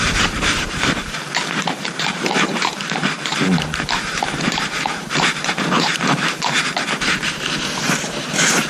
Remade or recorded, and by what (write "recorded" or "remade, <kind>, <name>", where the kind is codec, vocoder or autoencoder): remade, vocoder, BigVGAN v2